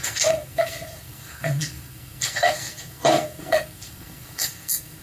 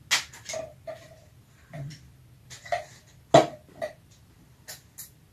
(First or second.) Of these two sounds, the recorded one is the second